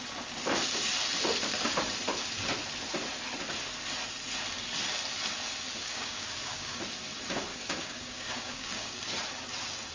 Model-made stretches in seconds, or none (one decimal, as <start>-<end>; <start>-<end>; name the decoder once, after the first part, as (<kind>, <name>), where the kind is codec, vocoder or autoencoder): 5.8-6.8 (codec, DAC); 7.5-9.0